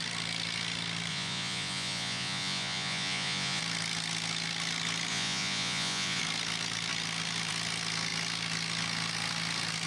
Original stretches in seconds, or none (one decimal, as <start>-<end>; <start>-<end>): 0.0-1.1; 3.6-5.1; 6.2-9.9